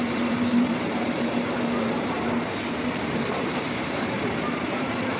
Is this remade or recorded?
remade